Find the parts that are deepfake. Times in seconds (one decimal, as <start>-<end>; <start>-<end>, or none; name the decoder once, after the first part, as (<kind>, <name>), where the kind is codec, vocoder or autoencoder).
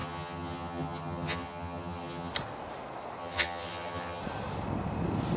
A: 0.0-2.3 (vocoder, HiFi-GAN); 3.2-4.2